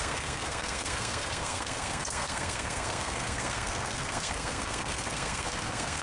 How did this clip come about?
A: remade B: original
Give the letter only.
A